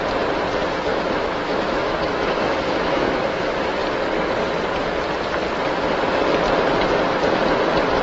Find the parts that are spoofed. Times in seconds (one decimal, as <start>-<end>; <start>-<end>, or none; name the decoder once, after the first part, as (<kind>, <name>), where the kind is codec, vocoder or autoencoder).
0.9-3.4 (autoencoder, DAC-VAE)